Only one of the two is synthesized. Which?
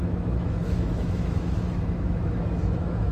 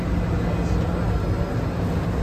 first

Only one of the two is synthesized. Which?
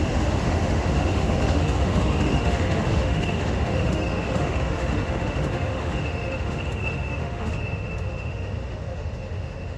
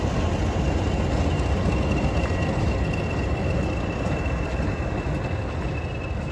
first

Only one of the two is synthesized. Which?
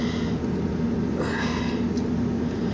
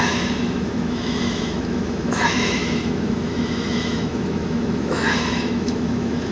second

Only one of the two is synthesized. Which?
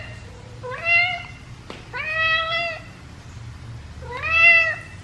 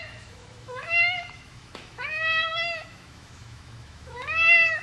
second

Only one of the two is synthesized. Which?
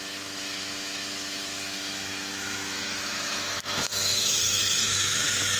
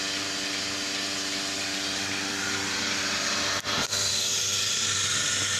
first